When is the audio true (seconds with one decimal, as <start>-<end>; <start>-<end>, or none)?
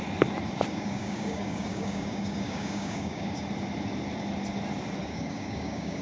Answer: 0.0-0.7; 3.4-5.0